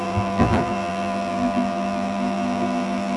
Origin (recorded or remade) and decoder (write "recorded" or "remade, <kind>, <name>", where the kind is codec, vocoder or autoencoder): remade, vocoder, BigVGAN v2